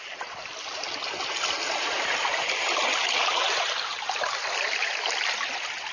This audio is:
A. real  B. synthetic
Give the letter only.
A